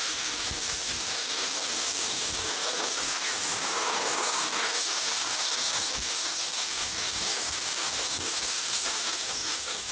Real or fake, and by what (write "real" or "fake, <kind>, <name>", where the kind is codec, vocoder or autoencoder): fake, codec, DAC